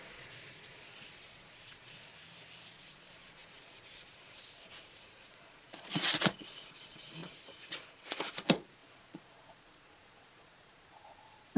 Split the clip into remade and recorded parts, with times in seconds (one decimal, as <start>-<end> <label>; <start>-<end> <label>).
0.0-2.1 remade; 2.1-2.7 recorded; 2.7-11.6 remade